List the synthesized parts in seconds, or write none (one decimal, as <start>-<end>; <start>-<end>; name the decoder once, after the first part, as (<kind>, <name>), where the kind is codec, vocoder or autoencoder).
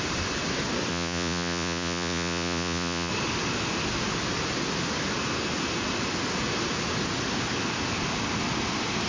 0.9-3.1 (vocoder, Vocos)